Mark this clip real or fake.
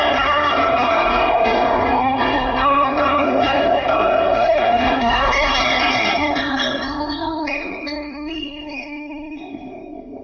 fake